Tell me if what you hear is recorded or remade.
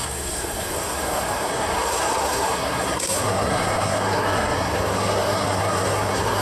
remade